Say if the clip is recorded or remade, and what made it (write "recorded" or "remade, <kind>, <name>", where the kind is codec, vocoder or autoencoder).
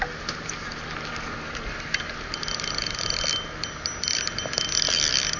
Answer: recorded